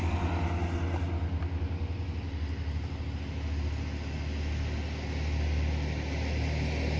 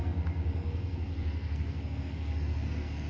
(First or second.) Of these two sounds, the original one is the first